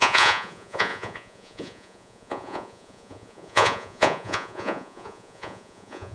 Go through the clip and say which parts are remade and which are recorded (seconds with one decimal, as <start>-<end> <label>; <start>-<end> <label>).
0.0-6.1 remade